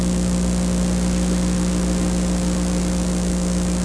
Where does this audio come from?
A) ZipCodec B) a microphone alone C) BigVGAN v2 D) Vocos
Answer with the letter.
B